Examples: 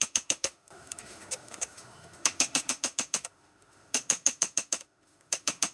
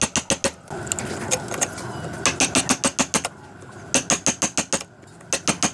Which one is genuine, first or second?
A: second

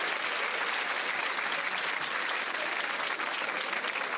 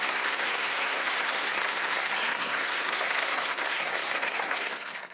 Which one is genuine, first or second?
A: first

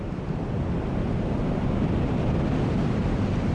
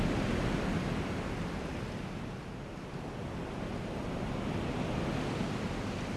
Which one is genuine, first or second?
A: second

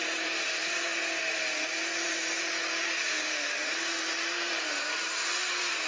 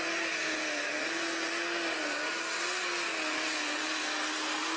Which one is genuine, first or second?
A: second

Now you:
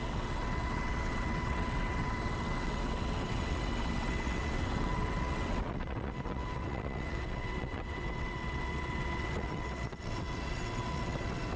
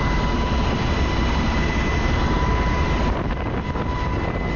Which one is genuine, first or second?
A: second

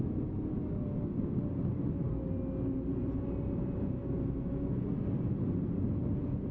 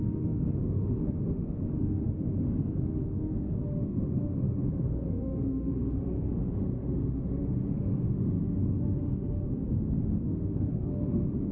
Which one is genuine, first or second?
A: first